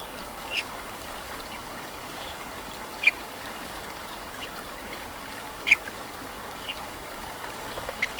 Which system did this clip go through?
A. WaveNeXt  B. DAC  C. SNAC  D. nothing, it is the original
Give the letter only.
B